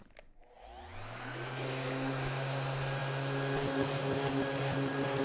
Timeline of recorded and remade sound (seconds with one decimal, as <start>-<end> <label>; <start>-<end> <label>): 0.0-5.2 recorded